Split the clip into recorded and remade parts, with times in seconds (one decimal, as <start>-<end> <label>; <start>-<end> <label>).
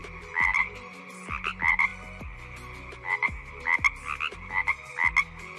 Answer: 0.0-1.0 remade; 1.0-5.6 recorded